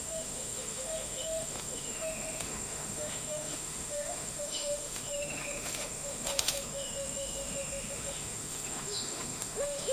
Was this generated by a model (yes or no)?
yes